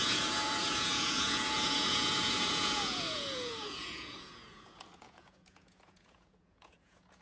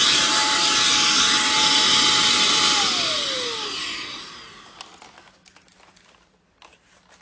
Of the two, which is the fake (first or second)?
first